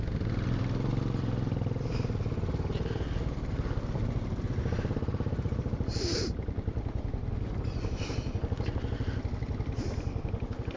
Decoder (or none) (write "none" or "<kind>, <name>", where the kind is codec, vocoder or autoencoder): none